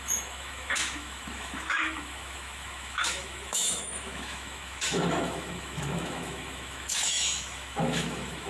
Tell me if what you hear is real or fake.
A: fake